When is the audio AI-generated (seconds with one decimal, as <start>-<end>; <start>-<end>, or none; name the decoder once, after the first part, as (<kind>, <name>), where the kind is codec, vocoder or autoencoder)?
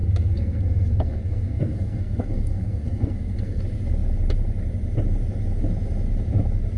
0.0-3.6 (codec, SNAC)